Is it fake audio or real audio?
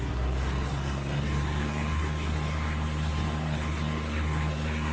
fake